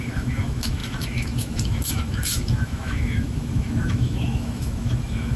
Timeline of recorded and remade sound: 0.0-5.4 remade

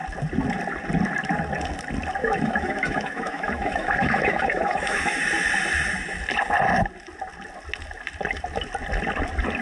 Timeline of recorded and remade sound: 0.0-2.2 recorded; 2.2-5.2 remade; 5.2-9.6 recorded

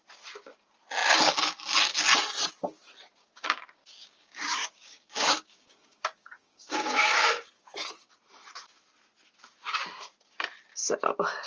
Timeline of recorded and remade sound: 0.0-3.2 recorded; 3.2-8.1 remade; 8.1-11.5 recorded

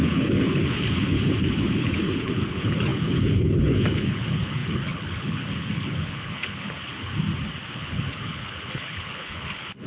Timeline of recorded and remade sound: 0.0-7.1 remade; 7.1-7.7 recorded; 7.7-9.9 remade

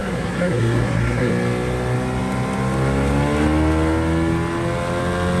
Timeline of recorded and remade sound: 0.0-1.3 remade; 1.3-5.4 recorded

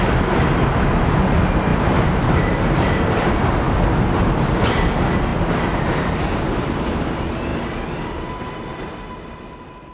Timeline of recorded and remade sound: 0.0-1.7 recorded; 1.7-4.2 remade; 4.2-9.9 recorded

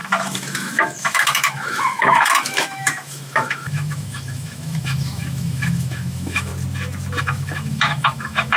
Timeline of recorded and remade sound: 0.0-6.5 remade; 6.5-7.2 recorded; 7.2-8.6 remade